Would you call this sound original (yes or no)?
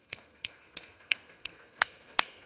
no